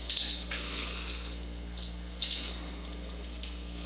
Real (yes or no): no